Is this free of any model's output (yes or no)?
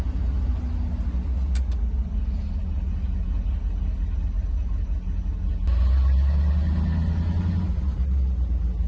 yes